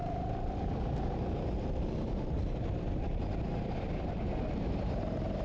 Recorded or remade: remade